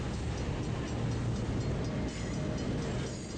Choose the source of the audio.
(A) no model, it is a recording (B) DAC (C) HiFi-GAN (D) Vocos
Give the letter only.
A